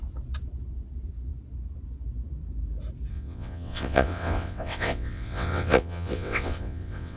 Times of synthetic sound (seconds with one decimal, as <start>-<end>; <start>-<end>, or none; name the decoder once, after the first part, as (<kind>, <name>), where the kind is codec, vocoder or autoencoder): 3.1-7.2 (vocoder, WaveNeXt)